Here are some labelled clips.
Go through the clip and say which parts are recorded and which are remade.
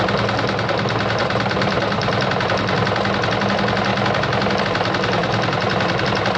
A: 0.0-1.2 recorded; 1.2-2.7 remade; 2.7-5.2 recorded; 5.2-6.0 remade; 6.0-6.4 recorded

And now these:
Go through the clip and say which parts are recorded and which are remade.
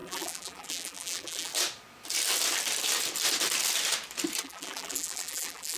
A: 0.0-1.5 remade; 1.5-4.4 recorded; 4.4-5.8 remade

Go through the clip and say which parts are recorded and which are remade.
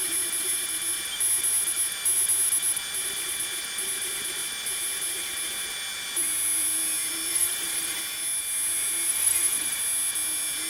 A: 0.0-7.3 recorded; 7.3-8.0 remade; 8.0-9.1 recorded; 9.1-9.8 remade; 9.8-10.7 recorded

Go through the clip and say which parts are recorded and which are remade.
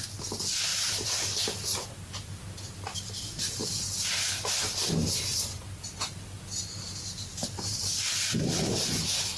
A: 0.0-7.4 recorded; 7.4-8.5 remade; 8.5-9.4 recorded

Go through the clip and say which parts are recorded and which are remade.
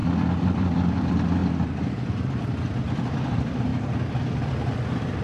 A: 0.0-0.6 recorded; 0.6-3.7 remade; 3.7-4.5 recorded; 4.5-5.2 remade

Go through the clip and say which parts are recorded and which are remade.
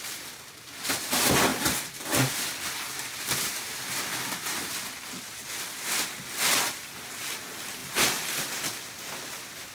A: 0.0-1.5 recorded; 1.5-2.3 remade; 2.3-7.8 recorded; 7.8-8.4 remade; 8.4-9.7 recorded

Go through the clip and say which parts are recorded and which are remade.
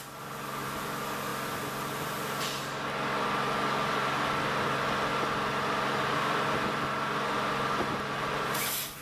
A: 0.0-9.0 recorded